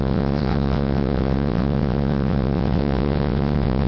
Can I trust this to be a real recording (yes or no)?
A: no